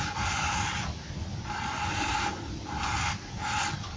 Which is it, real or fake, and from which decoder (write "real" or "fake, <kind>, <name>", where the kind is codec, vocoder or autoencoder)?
real